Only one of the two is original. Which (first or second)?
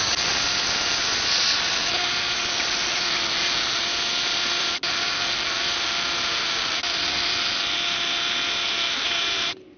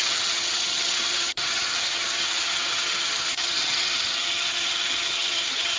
first